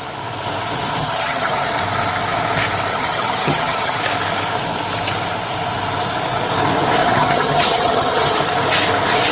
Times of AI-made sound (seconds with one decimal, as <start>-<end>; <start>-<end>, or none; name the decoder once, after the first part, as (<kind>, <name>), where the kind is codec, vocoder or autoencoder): 1.0-1.6 (vocoder, HiFi-GAN); 2.9-4.0; 7.0-8.4

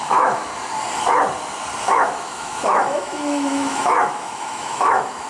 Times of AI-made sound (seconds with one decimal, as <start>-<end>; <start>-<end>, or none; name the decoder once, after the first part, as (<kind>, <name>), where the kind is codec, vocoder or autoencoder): 0.0-0.5 (autoencoder, DAC-VAE); 1.8-5.3

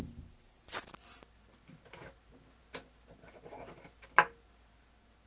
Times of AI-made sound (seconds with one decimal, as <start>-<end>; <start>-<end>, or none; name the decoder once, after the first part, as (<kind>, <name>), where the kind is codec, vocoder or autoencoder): none

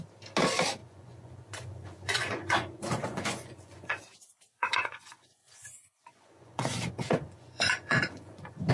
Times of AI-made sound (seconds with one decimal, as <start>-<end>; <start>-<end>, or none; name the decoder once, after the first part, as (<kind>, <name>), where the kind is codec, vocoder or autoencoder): 0.8-4.0 (vocoder, Vocos); 4.5-8.7

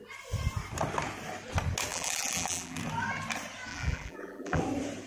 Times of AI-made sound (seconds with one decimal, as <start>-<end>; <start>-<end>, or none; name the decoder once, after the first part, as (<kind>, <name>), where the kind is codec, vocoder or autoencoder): 1.9-2.8 (vocoder, BigVGAN v2); 3.7-4.6

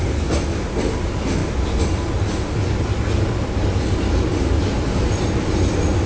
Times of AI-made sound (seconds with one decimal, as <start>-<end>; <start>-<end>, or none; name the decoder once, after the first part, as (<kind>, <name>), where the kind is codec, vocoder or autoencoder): none

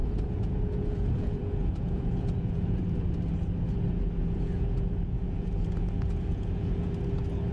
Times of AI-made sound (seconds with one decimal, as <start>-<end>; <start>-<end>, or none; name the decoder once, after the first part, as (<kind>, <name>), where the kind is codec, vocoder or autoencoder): 0.0-3.1 (vocoder, Vocos); 4.2-6.9